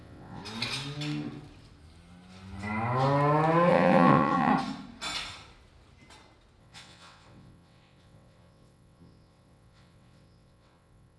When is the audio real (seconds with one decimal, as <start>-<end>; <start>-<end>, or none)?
0.4-3.7; 4.5-6.6